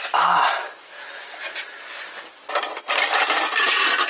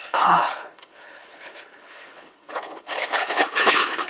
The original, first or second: first